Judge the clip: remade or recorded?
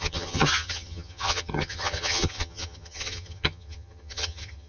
remade